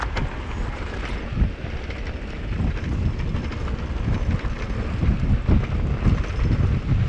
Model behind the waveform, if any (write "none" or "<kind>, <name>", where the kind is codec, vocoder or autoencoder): none